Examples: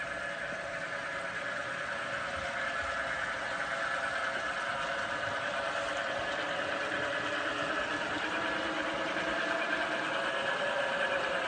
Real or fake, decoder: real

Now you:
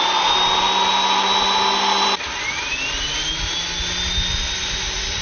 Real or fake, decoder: real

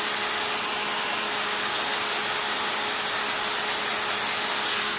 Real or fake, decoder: real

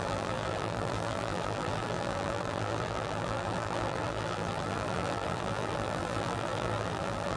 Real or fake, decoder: fake, vocoder, BigVGAN v2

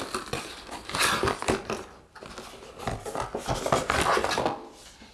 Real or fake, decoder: real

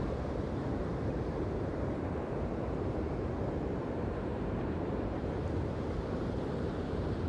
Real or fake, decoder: fake, vocoder, BigVGAN v2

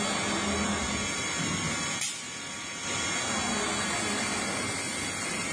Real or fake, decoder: real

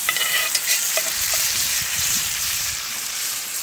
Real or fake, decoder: fake, vocoder, BigVGAN v2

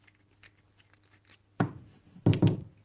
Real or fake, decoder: fake, vocoder, BigVGAN v2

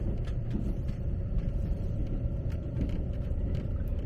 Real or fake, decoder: fake, vocoder, BigVGAN v2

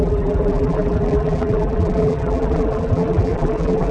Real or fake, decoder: fake, vocoder, BigVGAN v2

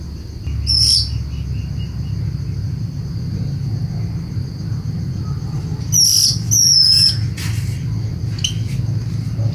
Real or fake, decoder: real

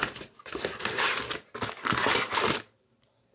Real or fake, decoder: real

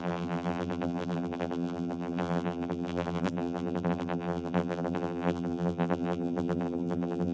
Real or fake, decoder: fake, vocoder, BigVGAN v2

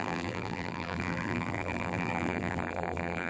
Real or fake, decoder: fake, vocoder, BigVGAN v2